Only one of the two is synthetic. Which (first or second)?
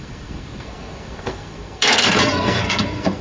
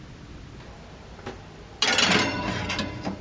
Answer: first